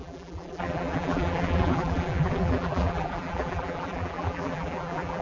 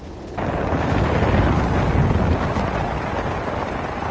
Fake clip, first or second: first